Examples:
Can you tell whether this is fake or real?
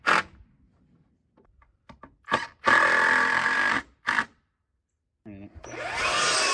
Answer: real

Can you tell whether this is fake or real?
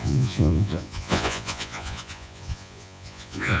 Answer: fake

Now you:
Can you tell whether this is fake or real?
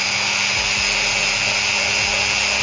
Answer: real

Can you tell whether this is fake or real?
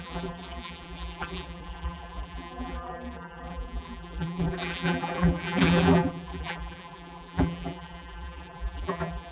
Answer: fake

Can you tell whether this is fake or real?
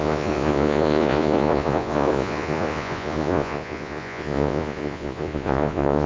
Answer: fake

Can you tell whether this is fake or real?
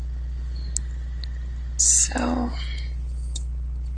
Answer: real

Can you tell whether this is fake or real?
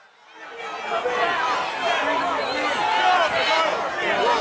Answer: real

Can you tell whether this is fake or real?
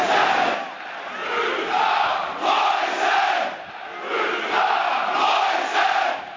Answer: real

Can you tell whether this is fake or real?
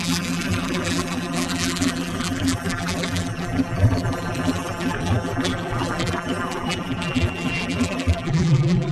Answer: fake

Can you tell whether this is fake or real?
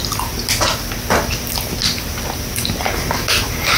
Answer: real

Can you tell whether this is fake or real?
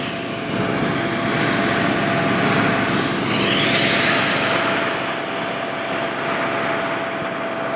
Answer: real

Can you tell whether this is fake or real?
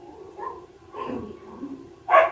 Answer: fake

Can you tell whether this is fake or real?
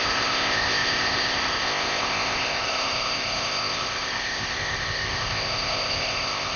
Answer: fake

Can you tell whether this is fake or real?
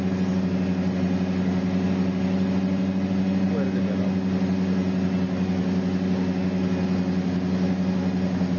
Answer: real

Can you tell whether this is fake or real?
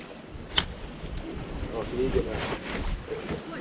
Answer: real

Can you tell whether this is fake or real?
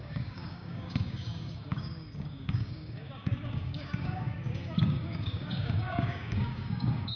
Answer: fake